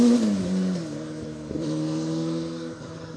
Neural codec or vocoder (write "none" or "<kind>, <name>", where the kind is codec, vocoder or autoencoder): codec, DAC